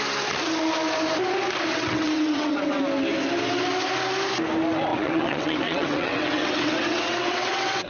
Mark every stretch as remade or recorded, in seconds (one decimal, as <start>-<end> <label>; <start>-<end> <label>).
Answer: 0.0-1.7 recorded; 1.7-2.8 remade; 2.8-4.9 recorded; 4.9-7.9 remade